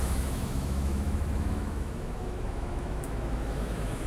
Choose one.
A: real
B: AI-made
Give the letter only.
B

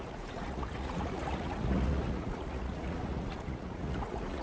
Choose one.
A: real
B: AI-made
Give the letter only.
B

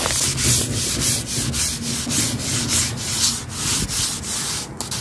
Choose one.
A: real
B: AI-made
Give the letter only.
A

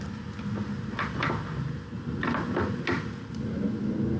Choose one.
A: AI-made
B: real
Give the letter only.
B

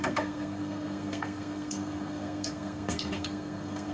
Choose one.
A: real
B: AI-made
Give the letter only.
B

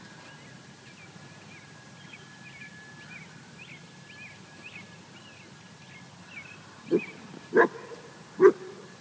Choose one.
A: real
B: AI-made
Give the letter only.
A